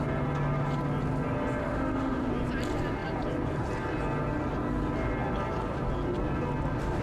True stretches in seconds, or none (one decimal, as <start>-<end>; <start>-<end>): 0.0-1.6; 2.3-7.0